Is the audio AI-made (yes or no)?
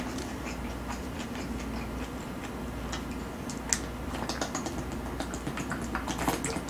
no